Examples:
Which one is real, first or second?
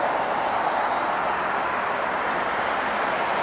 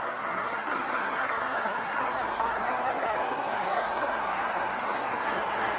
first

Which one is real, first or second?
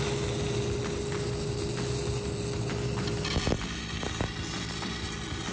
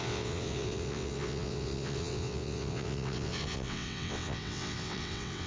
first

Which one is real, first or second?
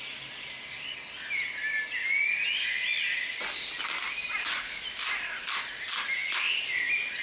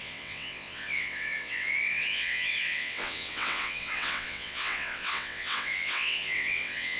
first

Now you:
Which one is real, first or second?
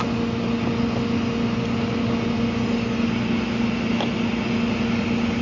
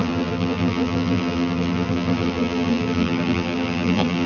first